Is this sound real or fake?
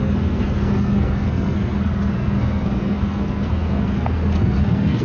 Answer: fake